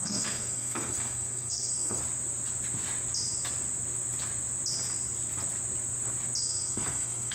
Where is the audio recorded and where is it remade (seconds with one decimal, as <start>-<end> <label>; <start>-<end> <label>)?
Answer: 0.0-2.0 remade; 2.0-6.4 recorded; 6.4-7.3 remade